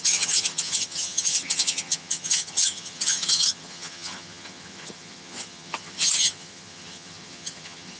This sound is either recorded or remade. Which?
remade